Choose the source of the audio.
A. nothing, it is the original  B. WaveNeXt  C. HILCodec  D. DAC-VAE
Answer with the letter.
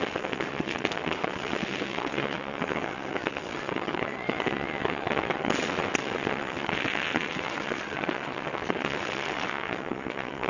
B